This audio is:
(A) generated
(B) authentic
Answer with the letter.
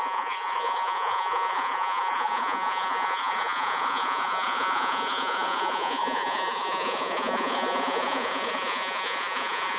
A